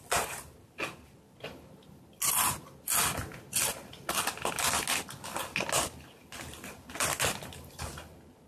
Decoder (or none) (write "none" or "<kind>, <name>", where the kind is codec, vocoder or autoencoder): none